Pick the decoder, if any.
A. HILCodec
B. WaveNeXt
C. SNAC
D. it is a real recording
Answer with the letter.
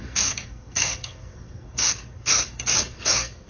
C